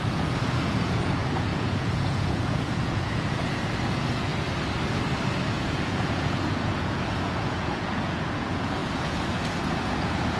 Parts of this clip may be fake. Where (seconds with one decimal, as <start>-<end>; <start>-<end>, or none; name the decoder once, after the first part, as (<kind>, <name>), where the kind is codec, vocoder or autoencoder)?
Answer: 0.0-4.3 (vocoder, Vocos); 5.5-10.4